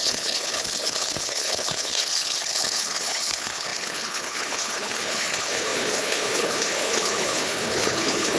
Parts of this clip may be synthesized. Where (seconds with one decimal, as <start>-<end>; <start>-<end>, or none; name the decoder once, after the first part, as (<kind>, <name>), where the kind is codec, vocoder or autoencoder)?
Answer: 0.0-8.4 (codec, HILCodec)